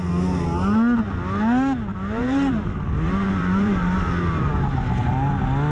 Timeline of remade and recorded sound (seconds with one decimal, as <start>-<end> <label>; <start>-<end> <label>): 0.0-1.9 recorded; 1.9-5.3 remade; 5.3-5.7 recorded